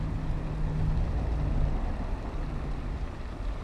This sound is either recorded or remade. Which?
recorded